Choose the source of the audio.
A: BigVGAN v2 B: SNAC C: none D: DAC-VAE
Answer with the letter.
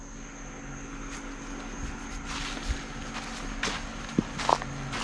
C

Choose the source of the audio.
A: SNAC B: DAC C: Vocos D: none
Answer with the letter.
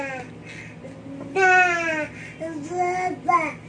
D